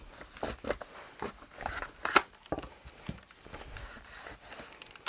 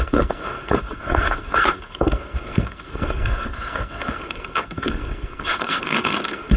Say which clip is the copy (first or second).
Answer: second